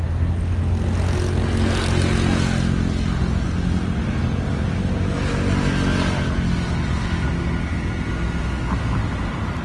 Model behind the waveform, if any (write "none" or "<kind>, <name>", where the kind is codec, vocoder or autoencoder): none